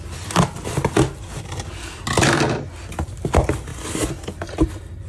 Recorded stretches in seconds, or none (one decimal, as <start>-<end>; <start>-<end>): 0.0-5.1